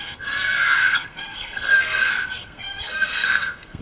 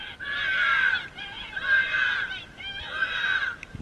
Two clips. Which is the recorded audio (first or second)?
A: second